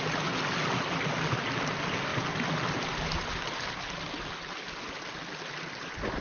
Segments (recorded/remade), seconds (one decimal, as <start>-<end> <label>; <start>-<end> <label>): 0.0-6.2 recorded